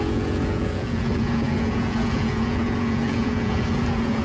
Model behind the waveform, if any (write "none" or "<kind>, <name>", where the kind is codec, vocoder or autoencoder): vocoder, Vocos